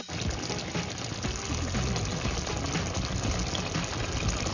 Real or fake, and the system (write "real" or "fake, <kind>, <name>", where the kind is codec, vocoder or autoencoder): real